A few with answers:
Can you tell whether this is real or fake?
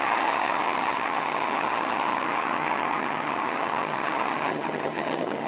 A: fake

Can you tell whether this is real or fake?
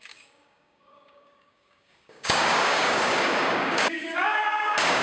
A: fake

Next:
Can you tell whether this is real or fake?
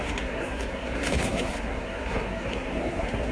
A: fake